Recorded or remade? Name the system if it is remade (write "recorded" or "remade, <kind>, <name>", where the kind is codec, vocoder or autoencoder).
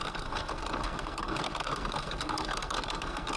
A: remade, codec, SNAC